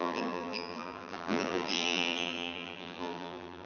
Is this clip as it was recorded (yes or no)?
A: no